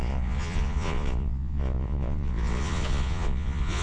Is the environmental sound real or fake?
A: fake